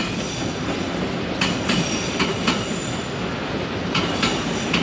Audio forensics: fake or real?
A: real